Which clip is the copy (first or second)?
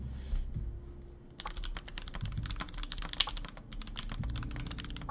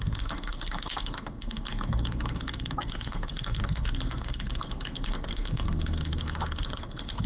second